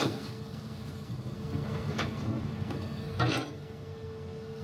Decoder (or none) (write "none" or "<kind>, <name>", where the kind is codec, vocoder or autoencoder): codec, SNAC